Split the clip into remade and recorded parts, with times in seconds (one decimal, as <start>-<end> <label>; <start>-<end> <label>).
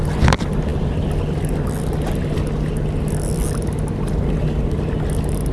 0.0-5.5 recorded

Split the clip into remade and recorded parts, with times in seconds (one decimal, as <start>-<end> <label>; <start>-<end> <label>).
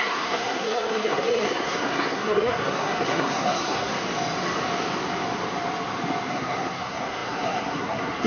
0.0-4.0 remade; 4.0-6.3 recorded; 6.3-8.3 remade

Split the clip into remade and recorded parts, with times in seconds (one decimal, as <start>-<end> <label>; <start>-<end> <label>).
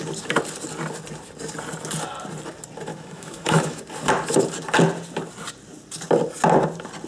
0.0-2.9 recorded; 2.9-3.8 remade; 3.8-7.1 recorded